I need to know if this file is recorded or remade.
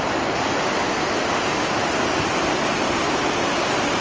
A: recorded